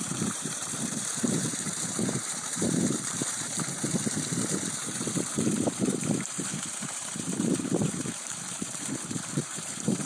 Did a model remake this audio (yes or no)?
yes